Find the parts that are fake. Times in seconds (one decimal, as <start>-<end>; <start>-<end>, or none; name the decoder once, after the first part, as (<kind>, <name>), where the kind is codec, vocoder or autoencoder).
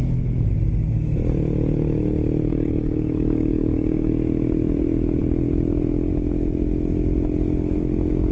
2.5-4.1 (codec, DAC)